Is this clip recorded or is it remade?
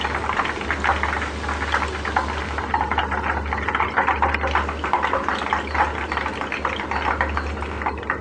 recorded